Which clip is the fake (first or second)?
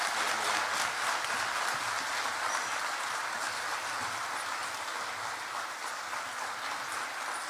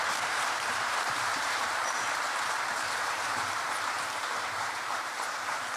second